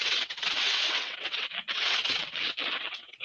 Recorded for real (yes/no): no